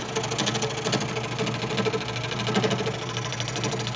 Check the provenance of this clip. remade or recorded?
recorded